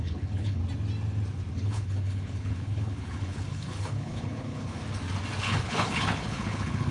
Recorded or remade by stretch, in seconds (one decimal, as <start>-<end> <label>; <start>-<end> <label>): 0.0-0.6 remade; 0.6-1.5 recorded; 1.5-4.8 remade; 4.8-5.4 recorded; 5.4-6.9 remade